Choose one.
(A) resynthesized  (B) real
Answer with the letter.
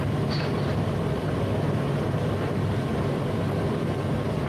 B